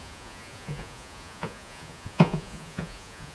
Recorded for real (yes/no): no